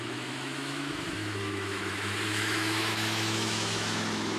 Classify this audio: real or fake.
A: fake